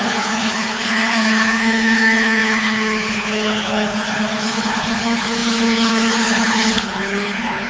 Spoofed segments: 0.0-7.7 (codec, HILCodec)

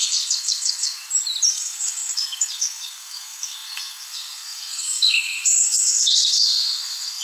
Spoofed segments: 0.0-0.9 (codec, SNAC); 1.5-7.2